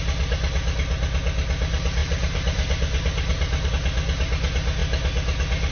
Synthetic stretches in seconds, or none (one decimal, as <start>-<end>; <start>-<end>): 2.0-3.7